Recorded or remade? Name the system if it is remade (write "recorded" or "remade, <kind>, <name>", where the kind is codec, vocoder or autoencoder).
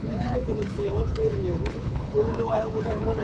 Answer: remade, codec, HILCodec